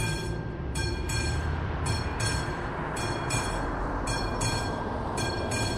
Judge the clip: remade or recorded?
remade